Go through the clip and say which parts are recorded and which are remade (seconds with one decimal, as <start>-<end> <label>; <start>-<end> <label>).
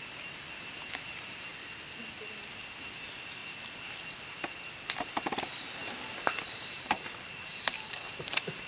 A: 0.0-1.5 remade; 1.5-2.8 recorded; 2.8-3.4 remade; 3.4-5.1 recorded; 5.1-8.7 remade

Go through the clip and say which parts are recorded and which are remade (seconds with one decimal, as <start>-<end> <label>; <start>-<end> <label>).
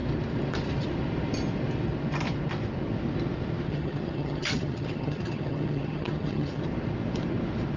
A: 0.0-3.7 recorded; 3.7-6.6 remade; 6.6-7.8 recorded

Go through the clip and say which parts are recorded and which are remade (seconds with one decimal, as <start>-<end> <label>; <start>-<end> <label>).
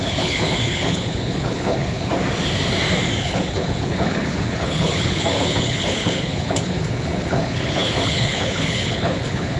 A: 0.0-2.1 remade; 2.1-3.2 recorded; 3.2-9.6 remade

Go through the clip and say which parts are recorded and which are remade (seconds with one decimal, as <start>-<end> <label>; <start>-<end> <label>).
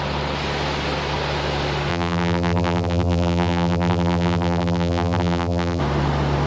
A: 0.0-1.9 recorded; 1.9-5.8 remade; 5.8-6.5 recorded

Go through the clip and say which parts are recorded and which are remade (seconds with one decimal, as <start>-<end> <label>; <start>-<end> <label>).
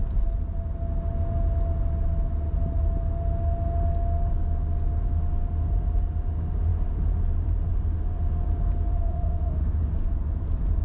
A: 0.0-8.9 recorded; 8.9-9.8 remade; 9.8-10.8 recorded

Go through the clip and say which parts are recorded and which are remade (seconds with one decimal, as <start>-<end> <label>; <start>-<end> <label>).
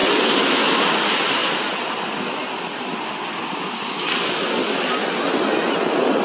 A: 0.0-6.2 recorded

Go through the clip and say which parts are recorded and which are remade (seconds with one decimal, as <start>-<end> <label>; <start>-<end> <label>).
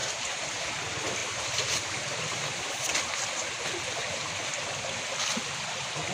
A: 0.0-0.6 remade; 0.6-1.2 recorded; 1.2-2.7 remade; 2.7-6.1 recorded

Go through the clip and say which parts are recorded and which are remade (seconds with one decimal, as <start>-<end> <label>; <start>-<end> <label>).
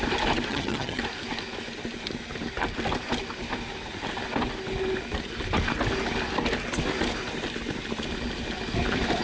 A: 0.0-0.5 recorded; 0.5-1.0 remade; 1.0-9.2 recorded